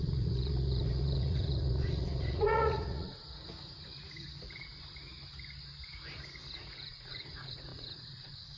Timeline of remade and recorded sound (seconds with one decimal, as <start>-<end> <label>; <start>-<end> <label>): 0.0-3.2 remade; 3.2-6.5 recorded; 6.5-8.6 remade